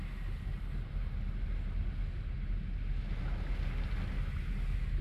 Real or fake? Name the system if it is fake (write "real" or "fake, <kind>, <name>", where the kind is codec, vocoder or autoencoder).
real